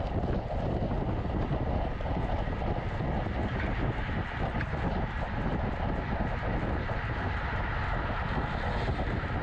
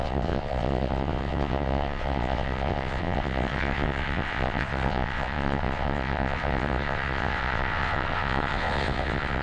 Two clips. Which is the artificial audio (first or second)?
second